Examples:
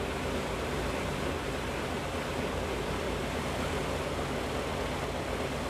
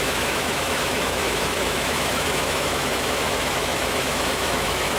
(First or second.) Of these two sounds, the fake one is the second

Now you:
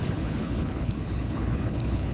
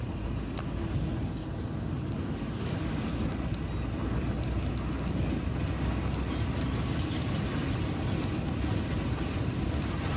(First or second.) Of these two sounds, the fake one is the first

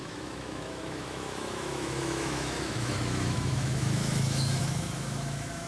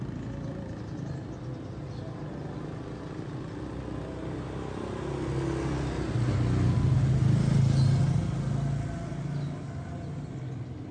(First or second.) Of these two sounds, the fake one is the first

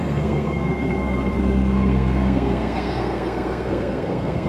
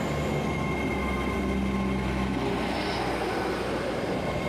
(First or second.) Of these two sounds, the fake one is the first